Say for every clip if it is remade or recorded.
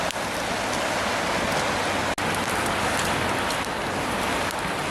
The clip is recorded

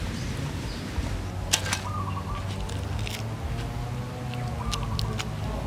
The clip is recorded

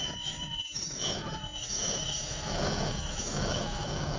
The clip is remade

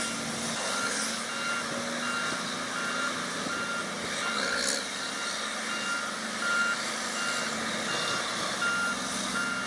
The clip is recorded